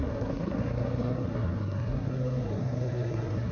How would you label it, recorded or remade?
remade